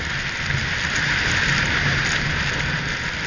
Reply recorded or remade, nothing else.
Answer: recorded